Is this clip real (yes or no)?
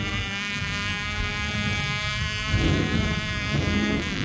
no